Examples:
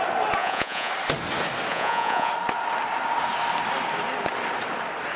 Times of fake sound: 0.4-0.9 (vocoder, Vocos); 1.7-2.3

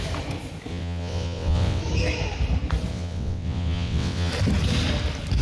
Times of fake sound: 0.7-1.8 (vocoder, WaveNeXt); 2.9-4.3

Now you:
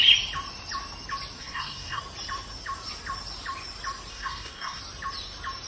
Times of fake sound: 1.4-2.0 (codec, SNAC); 4.1-4.8

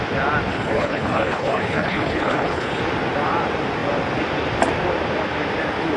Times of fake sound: 0.5-2.8 (codec, HILCodec)

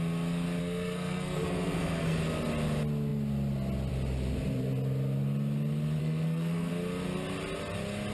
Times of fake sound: 0.6-2.2 (codec, SNAC); 6.0-6.7

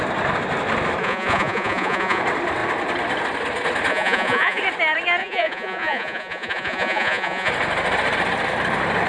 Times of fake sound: 1.0-2.2 (vocoder, Vocos); 3.9-4.6; 5.2-7.5

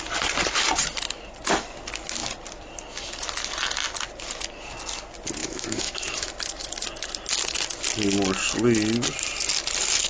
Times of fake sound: 5.4-6.3 (autoencoder, DAC-VAE)

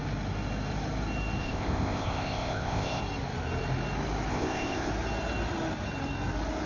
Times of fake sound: 1.4-3.0 (codec, ZipCodec); 4.3-4.9